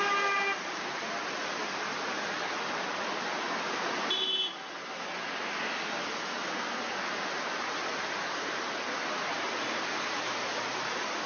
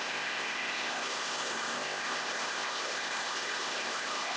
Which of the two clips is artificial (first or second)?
second